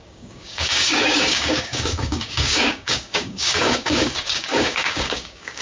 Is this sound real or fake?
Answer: fake